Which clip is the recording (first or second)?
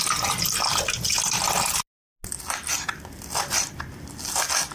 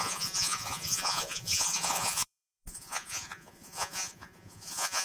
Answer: first